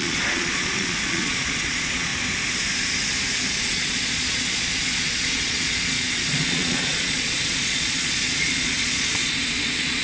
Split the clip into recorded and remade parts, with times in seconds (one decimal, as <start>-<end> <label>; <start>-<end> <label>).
0.0-2.1 remade; 2.1-3.6 recorded; 3.6-10.0 remade